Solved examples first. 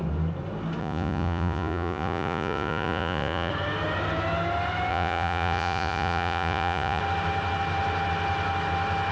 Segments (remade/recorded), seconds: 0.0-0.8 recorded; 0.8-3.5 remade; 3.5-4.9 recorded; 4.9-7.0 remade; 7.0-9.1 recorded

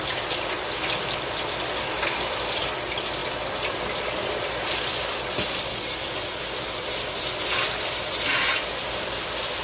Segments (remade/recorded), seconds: 0.0-9.6 recorded

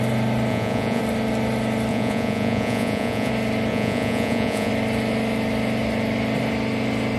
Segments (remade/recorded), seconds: 0.0-0.5 recorded; 0.5-1.0 remade; 1.0-1.9 recorded; 1.9-3.3 remade; 3.3-3.7 recorded; 3.7-4.7 remade; 4.7-7.2 recorded

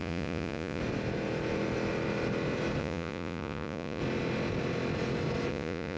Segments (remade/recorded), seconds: 0.0-0.8 remade; 0.8-2.8 recorded; 2.8-4.0 remade; 4.0-5.5 recorded; 5.5-6.0 remade

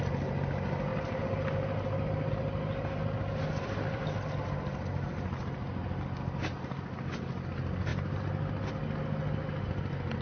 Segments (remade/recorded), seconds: 0.0-10.2 recorded

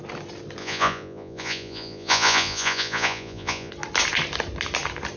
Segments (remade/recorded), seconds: 0.0-0.6 recorded; 0.6-3.7 remade; 3.7-5.2 recorded

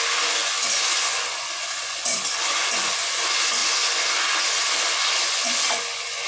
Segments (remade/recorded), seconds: 0.0-6.3 remade